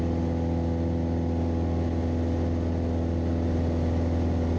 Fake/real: real